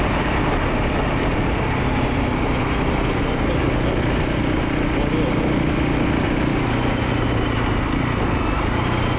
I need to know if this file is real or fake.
real